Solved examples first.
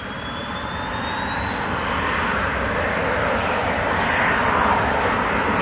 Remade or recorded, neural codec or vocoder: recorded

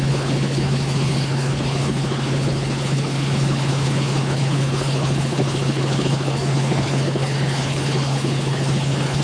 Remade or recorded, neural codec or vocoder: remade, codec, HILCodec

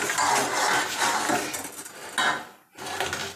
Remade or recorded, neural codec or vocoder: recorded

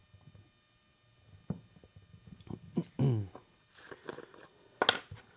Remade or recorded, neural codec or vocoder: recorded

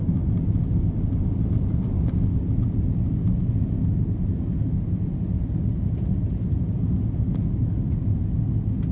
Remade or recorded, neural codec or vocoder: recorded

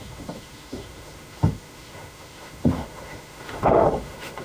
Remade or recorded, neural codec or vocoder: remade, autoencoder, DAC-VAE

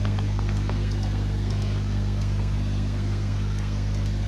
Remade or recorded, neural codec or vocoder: remade, codec, SNAC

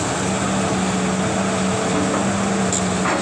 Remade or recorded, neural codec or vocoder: recorded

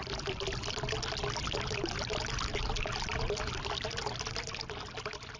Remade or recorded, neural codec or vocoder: recorded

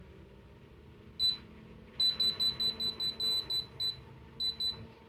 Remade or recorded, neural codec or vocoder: recorded